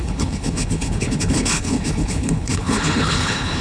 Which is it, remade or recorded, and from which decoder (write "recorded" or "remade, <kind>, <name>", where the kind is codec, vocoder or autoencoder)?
remade, codec, HILCodec